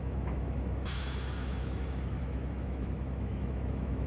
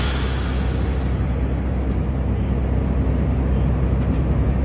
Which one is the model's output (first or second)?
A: first